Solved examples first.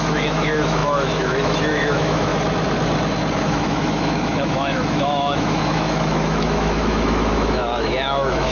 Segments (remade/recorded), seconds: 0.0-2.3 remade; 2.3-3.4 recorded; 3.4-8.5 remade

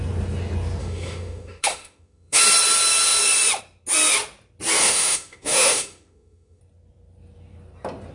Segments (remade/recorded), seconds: 0.0-0.8 recorded; 0.8-2.4 remade; 2.4-4.8 recorded; 4.8-6.6 remade; 6.6-8.1 recorded

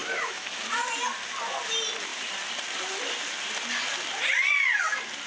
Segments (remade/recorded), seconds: 0.0-0.6 remade; 0.6-5.3 recorded